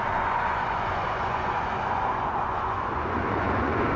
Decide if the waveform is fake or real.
fake